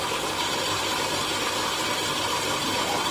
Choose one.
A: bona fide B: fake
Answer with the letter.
A